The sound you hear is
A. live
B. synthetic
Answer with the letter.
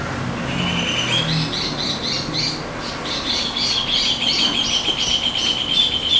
A